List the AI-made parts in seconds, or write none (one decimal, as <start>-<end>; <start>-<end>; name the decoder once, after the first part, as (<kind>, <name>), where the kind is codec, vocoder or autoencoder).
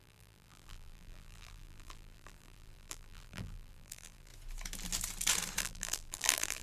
0.0-4.3 (vocoder, BigVGAN v2); 5.6-6.6